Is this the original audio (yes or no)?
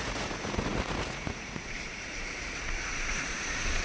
no